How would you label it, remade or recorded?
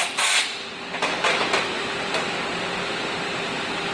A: recorded